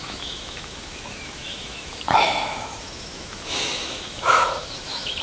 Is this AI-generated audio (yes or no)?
yes